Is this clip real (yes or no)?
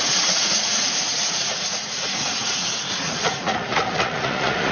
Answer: no